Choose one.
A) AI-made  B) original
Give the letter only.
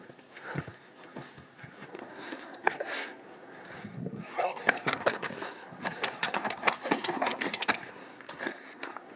A